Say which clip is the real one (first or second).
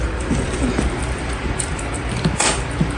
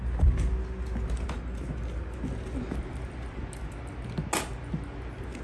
second